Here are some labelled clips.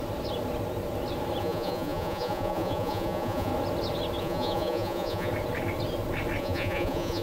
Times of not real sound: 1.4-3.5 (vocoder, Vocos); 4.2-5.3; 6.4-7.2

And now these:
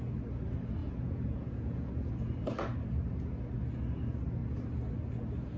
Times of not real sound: 0.8-1.9 (vocoder, Vocos)

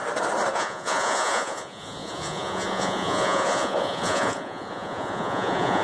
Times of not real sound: 0.5-5.8 (vocoder, Vocos)

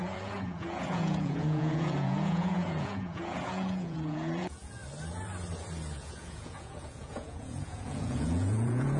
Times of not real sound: 0.0-4.8 (vocoder, Vocos); 5.9-9.0

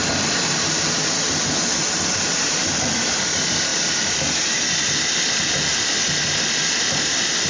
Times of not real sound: none

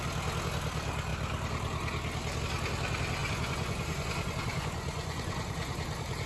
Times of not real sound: 3.2-6.3 (vocoder, Vocos)